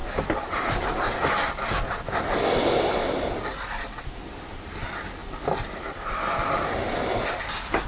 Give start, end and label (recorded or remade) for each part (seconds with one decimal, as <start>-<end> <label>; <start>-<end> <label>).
0.0-7.9 recorded